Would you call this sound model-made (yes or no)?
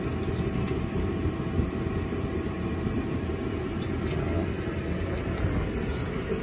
no